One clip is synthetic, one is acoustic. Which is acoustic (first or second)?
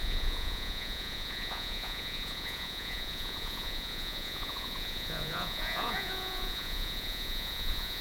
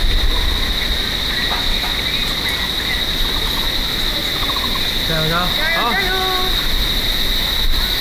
second